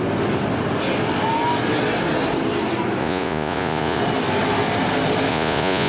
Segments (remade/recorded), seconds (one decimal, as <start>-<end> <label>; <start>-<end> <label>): 0.0-3.0 recorded; 3.0-4.0 remade; 4.0-5.3 recorded; 5.3-5.9 remade